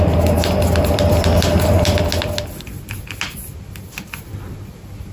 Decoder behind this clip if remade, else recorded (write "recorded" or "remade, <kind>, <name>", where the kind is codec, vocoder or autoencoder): recorded